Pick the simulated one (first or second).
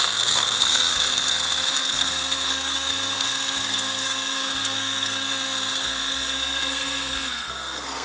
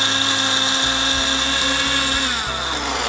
first